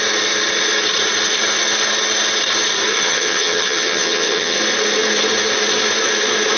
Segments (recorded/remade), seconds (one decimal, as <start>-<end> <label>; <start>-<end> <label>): 0.0-2.9 recorded; 2.9-4.6 remade; 4.6-6.6 recorded